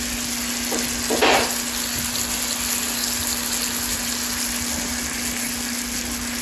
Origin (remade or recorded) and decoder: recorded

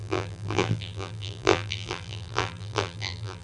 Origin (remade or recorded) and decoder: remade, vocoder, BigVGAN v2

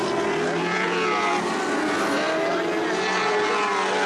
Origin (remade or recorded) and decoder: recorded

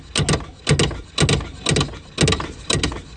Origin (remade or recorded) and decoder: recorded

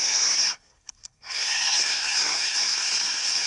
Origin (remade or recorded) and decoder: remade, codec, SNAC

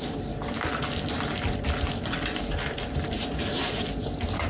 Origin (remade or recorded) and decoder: recorded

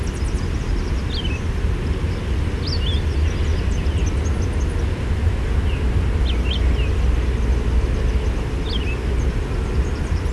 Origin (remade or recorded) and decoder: recorded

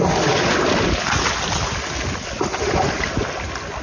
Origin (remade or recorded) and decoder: recorded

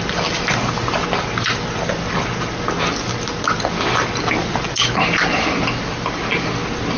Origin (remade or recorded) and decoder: recorded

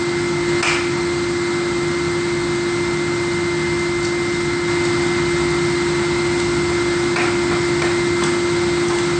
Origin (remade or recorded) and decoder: recorded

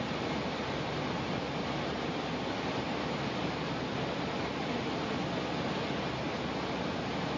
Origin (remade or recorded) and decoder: recorded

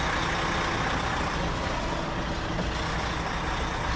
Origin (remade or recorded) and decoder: recorded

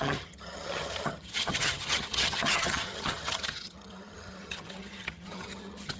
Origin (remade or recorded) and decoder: remade, vocoder, HiFi-GAN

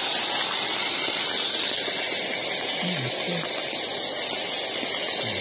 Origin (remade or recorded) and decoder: recorded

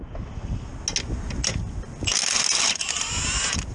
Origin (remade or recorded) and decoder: recorded